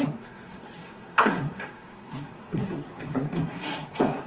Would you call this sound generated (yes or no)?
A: yes